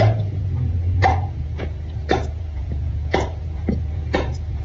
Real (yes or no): no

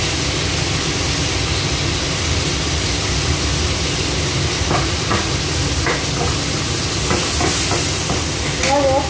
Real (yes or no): yes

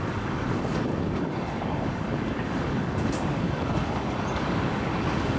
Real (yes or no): no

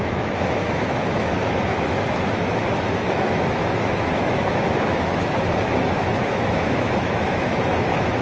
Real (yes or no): no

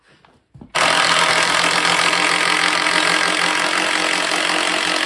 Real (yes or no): yes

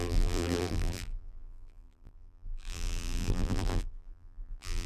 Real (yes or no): no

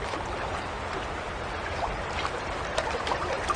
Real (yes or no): no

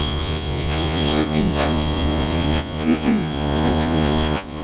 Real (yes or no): no